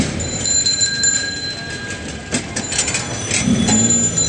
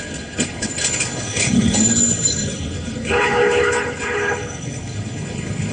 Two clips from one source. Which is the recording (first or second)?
first